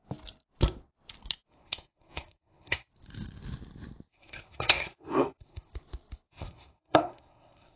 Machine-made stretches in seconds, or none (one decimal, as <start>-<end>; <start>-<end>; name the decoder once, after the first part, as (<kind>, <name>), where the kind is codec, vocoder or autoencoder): 1.5-2.9 (codec, SNAC); 4.1-5.7; 6.3-7.8